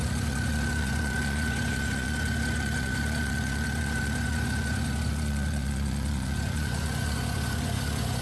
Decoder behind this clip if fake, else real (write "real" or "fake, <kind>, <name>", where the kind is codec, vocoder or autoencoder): fake, vocoder, Vocos